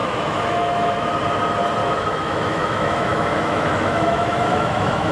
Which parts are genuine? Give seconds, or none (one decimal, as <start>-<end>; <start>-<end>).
1.1-1.8